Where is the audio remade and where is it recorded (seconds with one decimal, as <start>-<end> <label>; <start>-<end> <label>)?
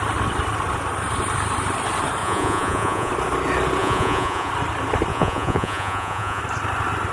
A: 0.0-2.2 recorded; 2.2-3.1 remade; 3.1-3.8 recorded; 3.8-4.5 remade; 4.5-5.1 recorded; 5.1-6.4 remade; 6.4-7.1 recorded